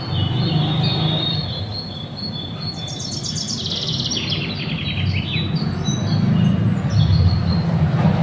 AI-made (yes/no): no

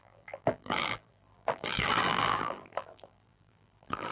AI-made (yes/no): yes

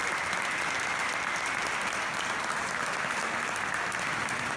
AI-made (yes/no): no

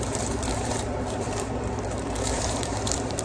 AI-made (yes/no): yes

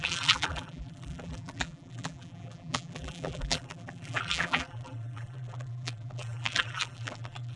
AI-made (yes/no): yes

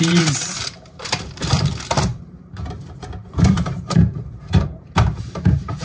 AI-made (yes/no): yes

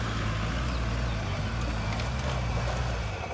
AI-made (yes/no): no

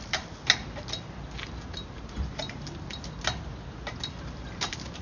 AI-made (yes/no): no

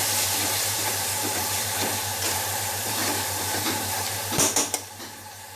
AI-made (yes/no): yes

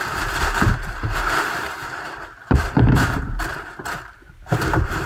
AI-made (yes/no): yes